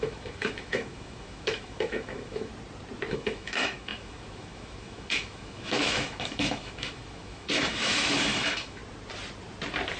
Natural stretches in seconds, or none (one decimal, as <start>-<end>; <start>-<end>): 2.5-3.1; 8.8-10.0